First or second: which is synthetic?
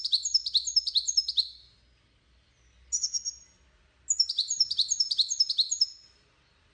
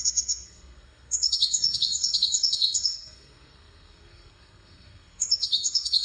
second